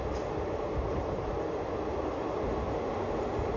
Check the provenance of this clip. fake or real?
real